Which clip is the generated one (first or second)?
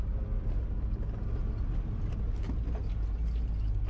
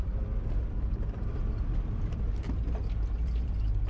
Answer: second